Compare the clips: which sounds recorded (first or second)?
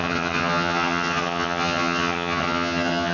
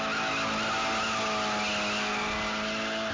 second